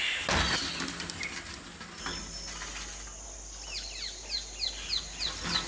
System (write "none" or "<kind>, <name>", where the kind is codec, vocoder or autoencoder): none